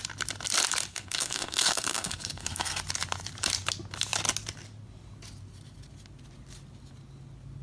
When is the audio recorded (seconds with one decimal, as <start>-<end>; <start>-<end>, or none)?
0.0-0.9; 2.8-7.6